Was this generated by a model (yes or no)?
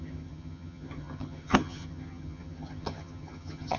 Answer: yes